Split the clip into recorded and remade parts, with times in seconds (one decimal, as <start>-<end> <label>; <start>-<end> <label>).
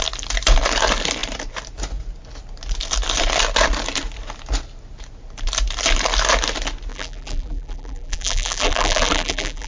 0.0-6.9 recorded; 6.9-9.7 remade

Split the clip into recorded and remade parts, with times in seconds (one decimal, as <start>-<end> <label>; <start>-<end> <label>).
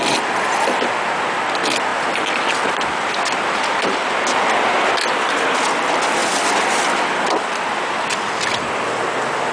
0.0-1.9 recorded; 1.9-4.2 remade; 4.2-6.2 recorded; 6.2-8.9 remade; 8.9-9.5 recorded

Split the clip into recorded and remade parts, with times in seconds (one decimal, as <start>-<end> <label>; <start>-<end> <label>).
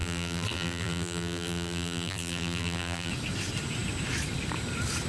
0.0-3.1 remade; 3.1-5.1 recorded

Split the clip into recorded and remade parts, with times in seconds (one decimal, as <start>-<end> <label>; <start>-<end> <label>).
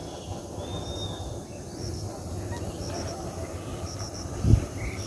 0.0-3.1 recorded; 3.1-5.1 remade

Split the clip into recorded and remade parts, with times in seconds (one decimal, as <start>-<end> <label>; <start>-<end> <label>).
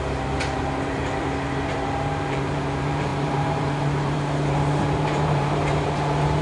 0.0-6.4 remade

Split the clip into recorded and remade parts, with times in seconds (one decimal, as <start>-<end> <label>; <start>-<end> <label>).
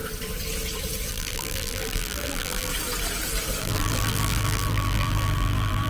0.0-1.1 recorded; 1.1-2.7 remade; 2.7-3.6 recorded; 3.6-5.9 remade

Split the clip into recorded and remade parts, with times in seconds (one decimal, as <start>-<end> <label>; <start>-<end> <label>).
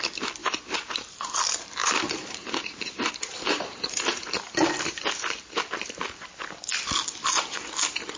0.0-0.4 recorded; 0.4-1.4 remade; 1.4-1.8 recorded; 1.8-5.7 remade; 5.7-8.2 recorded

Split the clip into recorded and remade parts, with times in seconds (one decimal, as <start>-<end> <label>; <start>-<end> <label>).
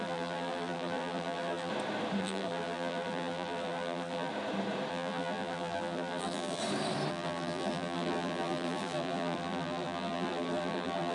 0.0-1.7 remade; 1.7-2.2 recorded; 2.2-4.3 remade; 4.3-4.9 recorded; 4.9-6.6 remade; 6.6-7.1 recorded; 7.1-11.1 remade